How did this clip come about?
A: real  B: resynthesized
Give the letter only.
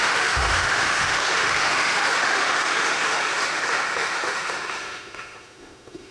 B